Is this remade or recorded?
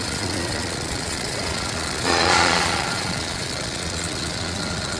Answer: remade